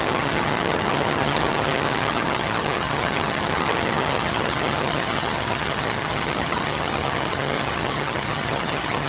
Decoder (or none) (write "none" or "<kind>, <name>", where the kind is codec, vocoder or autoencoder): vocoder, HiFi-GAN